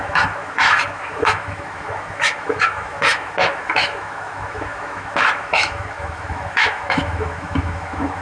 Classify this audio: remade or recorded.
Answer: remade